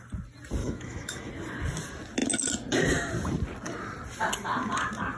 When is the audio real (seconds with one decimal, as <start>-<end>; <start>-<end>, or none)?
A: 0.0-0.6; 1.3-5.2